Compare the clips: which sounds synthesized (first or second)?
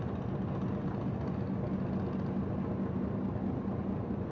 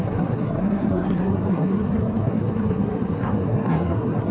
second